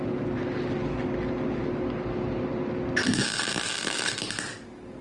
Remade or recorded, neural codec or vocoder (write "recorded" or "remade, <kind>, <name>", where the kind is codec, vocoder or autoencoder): recorded